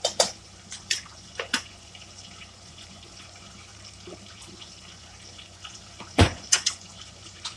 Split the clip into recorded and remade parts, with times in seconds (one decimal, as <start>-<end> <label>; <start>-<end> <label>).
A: 0.0-3.7 remade; 3.7-4.3 recorded; 4.3-7.6 remade